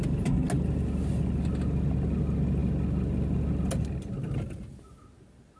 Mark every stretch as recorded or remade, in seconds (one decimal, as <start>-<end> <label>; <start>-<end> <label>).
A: 0.0-5.6 recorded